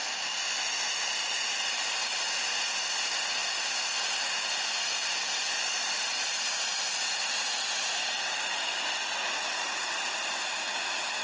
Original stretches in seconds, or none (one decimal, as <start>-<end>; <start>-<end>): 0.0-11.2

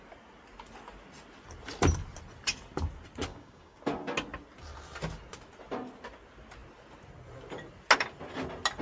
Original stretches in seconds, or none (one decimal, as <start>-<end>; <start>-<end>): 0.0-3.3; 3.8-8.8

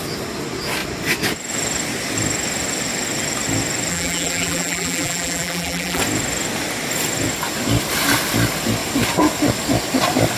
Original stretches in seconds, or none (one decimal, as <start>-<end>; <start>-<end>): 0.0-3.9; 6.0-10.4